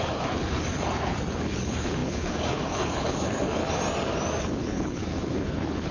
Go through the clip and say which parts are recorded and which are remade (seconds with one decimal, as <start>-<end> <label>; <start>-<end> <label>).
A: 0.0-3.6 remade; 3.6-4.4 recorded; 4.4-5.9 remade